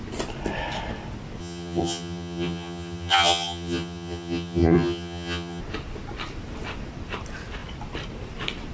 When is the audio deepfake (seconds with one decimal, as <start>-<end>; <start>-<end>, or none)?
1.4-5.6